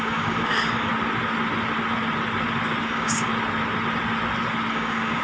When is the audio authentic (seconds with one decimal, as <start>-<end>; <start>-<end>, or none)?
0.9-2.8; 3.3-4.7